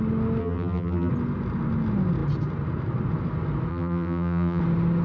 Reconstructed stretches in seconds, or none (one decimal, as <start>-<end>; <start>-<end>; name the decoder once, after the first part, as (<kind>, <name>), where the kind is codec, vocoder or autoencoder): 0.4-1.1 (vocoder, BigVGAN v2); 3.7-4.6